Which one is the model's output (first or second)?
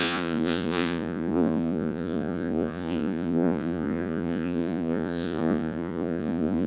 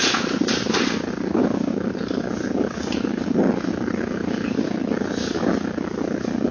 first